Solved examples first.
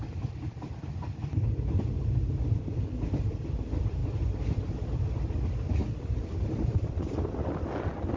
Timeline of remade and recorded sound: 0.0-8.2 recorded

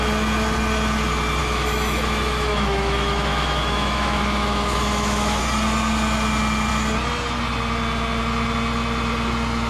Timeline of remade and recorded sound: 0.0-1.4 recorded; 1.4-5.4 remade; 5.4-9.7 recorded

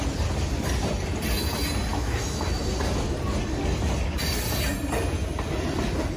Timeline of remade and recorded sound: 0.0-1.9 recorded; 1.9-2.6 remade; 2.6-6.2 recorded